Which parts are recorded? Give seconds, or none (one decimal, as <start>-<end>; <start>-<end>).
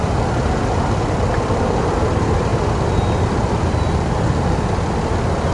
0.0-5.5